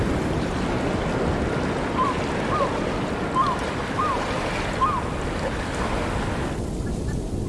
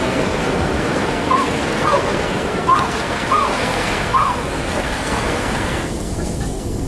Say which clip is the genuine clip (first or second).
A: first